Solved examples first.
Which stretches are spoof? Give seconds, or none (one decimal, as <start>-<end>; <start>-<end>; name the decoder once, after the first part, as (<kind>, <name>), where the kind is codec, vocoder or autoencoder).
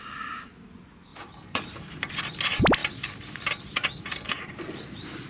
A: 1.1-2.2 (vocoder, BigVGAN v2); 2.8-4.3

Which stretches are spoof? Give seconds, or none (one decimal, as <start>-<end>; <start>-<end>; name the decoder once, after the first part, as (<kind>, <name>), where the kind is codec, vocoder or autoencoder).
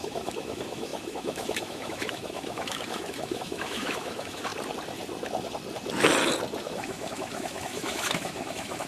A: 0.0-4.5 (autoencoder, DAC-VAE); 6.6-8.9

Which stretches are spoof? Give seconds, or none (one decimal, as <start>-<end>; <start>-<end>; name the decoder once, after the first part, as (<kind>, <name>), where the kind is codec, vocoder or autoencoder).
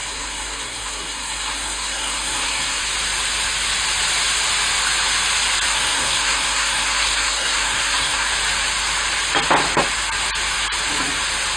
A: 0.0-2.8 (codec, SNAC); 5.7-8.3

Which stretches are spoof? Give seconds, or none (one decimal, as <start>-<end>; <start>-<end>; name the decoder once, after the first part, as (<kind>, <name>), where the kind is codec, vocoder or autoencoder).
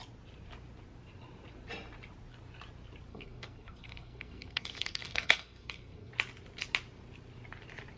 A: 3.1-6.1 (codec, SNAC)